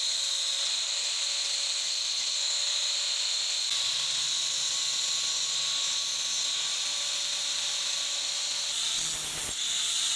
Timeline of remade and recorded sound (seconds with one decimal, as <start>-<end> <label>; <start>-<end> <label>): 0.0-10.2 recorded